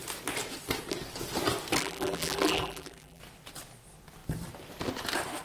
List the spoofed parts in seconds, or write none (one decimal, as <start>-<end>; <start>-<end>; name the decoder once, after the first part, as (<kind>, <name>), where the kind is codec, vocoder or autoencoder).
1.8-3.2 (vocoder, BigVGAN v2)